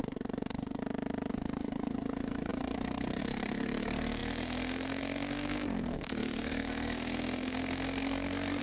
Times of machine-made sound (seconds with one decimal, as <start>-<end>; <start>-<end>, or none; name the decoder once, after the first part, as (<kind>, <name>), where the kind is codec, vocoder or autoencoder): 0.0-0.8 (codec, SNAC); 1.3-8.6